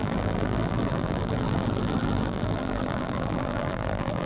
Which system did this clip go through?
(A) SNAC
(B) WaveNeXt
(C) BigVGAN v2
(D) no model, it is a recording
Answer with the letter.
C